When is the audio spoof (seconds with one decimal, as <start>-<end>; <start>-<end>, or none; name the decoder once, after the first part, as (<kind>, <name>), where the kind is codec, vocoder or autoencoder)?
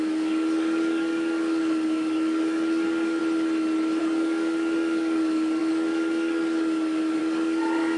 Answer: 0.0-3.2 (codec, DAC); 4.0-8.0